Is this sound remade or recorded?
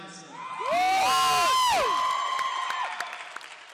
recorded